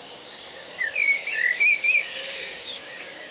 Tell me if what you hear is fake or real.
fake